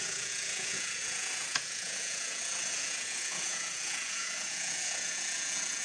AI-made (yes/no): yes